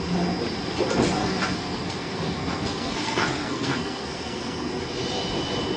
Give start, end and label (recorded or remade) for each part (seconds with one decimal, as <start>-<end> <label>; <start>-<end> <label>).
0.0-1.2 recorded; 1.2-4.7 remade; 4.7-5.8 recorded